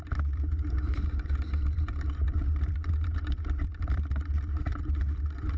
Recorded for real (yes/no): no